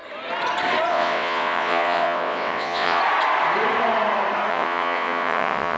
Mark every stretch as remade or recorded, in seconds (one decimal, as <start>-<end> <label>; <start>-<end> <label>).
0.0-0.9 recorded; 0.9-3.0 remade; 3.0-4.5 recorded; 4.5-5.8 remade